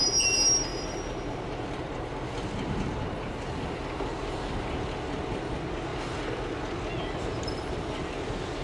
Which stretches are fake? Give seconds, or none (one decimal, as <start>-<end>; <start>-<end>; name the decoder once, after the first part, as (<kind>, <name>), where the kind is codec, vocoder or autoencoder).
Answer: 0.7-3.4 (vocoder, BigVGAN v2)